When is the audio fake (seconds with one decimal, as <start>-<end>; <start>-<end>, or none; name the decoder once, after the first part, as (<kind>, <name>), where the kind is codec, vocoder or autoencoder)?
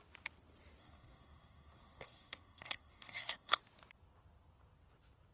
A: 0.8-3.6 (codec, SNAC)